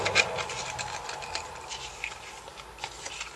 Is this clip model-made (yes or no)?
no